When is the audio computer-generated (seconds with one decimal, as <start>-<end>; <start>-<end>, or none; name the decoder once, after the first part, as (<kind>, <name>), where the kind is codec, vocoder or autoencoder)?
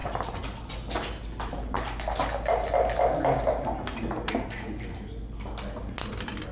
none